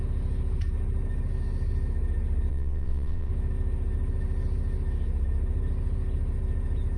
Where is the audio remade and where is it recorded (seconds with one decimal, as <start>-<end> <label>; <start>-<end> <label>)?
0.0-2.5 recorded; 2.5-3.3 remade; 3.3-7.0 recorded